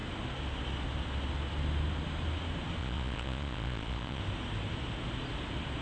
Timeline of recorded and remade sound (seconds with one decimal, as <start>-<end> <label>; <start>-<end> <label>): 0.0-2.8 recorded; 2.8-4.2 remade; 4.2-5.8 recorded